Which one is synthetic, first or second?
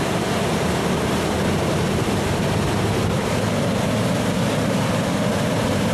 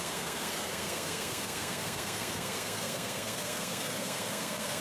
second